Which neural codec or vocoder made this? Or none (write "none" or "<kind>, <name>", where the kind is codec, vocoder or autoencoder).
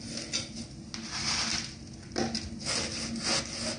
none